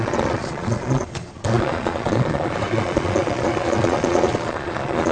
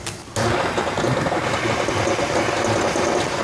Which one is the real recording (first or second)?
second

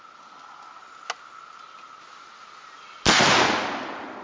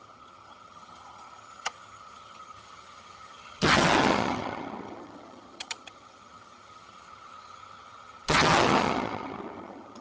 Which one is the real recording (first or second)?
first